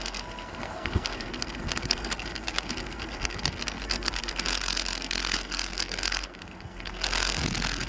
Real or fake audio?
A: fake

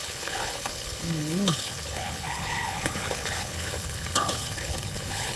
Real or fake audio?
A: fake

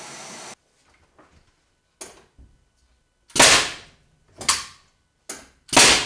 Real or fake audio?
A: real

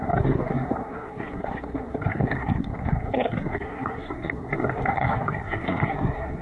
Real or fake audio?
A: fake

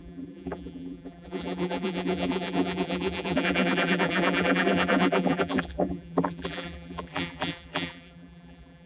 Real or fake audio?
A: fake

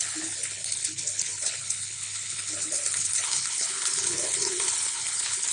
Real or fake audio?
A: fake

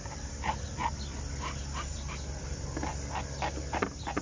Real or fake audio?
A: real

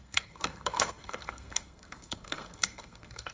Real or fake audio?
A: fake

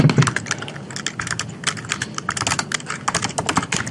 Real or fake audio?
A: real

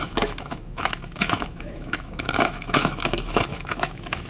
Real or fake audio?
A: fake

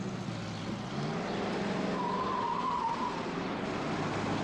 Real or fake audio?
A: real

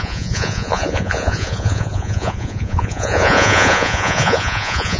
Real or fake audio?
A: fake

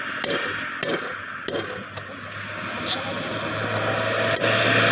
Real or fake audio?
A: real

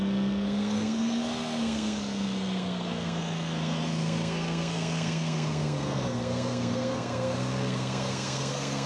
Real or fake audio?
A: fake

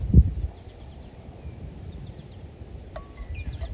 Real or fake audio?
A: fake